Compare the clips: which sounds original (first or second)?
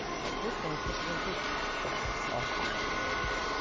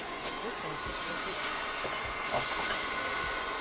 first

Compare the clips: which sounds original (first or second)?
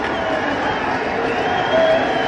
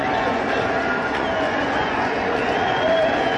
first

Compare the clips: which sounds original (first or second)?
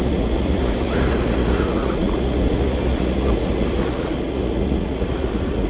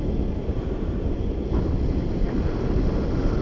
second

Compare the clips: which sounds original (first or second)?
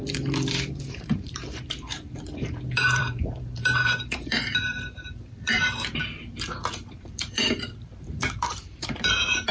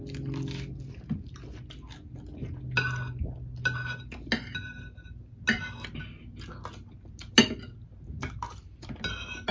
second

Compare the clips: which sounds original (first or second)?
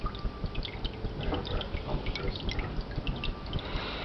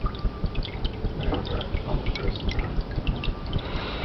first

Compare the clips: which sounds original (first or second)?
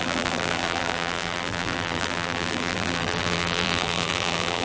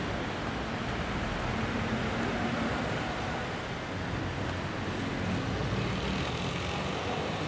second